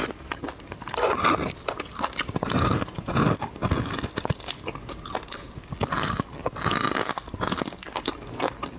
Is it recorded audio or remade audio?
recorded